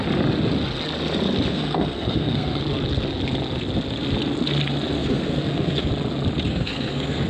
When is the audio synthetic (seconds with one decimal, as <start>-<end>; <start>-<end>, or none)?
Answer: 1.5-2.6; 5.0-5.9; 6.5-7.3